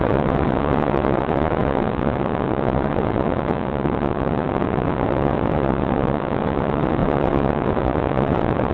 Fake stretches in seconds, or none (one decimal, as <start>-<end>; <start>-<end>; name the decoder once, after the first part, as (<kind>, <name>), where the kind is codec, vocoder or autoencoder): 0.0-8.7 (vocoder, WaveNeXt)